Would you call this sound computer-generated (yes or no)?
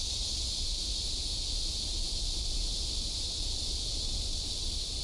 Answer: no